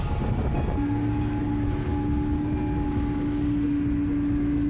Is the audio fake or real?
real